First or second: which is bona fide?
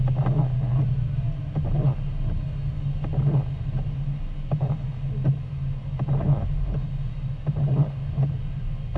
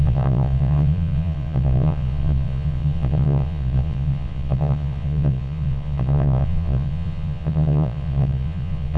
first